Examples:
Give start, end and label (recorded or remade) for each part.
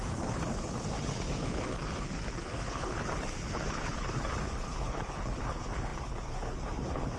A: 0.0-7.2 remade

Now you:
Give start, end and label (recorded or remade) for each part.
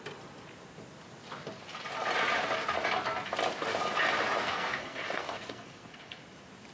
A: 0.0-4.4 recorded; 4.4-6.2 remade; 6.2-6.7 recorded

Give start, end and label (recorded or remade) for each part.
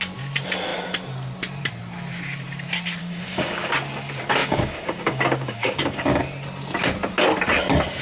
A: 0.0-3.0 recorded; 3.0-3.7 remade; 3.7-4.4 recorded; 4.4-6.2 remade; 6.2-8.0 recorded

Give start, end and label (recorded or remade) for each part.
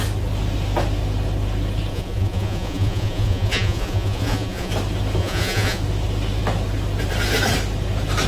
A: 0.0-1.9 recorded; 1.9-4.7 remade; 4.7-5.2 recorded; 5.2-5.8 remade; 5.8-8.3 recorded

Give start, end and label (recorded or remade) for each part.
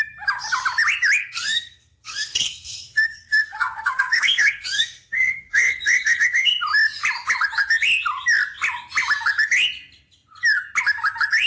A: 0.0-1.2 recorded; 1.2-6.5 remade; 6.5-11.5 recorded